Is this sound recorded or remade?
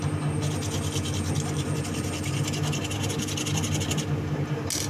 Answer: recorded